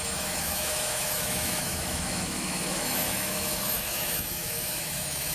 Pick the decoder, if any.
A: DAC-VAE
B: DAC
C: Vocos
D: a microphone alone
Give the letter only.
A